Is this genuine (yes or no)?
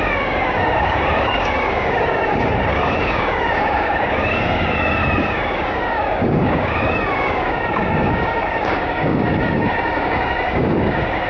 no